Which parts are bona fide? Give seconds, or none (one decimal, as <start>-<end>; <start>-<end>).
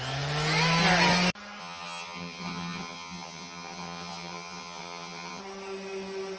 0.0-1.6; 5.4-6.4